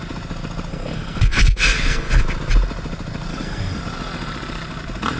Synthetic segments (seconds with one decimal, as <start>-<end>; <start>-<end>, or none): 0.7-2.2; 3.3-3.8